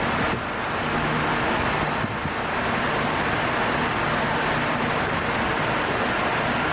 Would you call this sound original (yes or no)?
yes